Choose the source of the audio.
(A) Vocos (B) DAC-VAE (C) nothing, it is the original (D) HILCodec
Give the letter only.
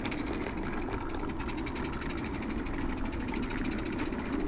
C